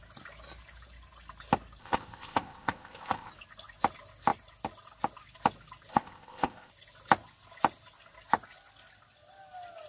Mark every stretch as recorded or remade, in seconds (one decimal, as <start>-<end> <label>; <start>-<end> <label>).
0.0-1.8 recorded; 1.8-3.3 remade; 3.3-5.9 recorded; 5.9-6.7 remade; 6.7-9.9 recorded